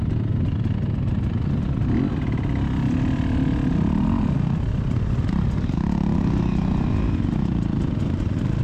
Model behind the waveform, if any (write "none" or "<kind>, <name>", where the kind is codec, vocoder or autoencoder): none